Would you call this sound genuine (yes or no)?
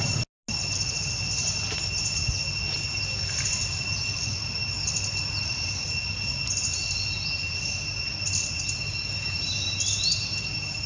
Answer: yes